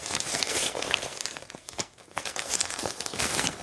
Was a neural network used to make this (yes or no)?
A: yes